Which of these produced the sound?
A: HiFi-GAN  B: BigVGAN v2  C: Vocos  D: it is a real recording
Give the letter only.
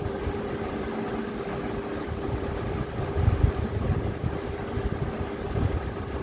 B